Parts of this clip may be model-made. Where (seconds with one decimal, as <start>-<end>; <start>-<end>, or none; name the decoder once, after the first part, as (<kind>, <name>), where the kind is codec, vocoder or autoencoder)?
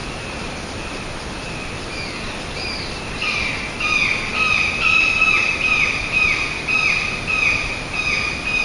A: none